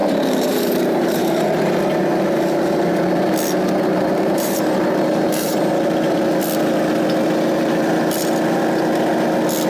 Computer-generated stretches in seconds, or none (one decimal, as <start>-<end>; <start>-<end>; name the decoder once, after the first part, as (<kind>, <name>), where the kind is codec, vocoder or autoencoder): 0.0-1.4 (vocoder, BigVGAN v2); 3.9-5.7